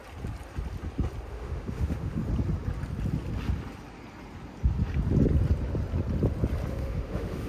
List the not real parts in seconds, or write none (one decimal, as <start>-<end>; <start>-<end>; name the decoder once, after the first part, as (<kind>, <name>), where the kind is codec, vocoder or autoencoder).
1.3-2.2 (autoencoder, DAC-VAE); 6.7-7.5